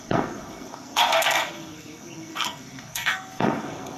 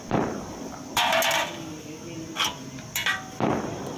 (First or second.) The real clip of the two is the second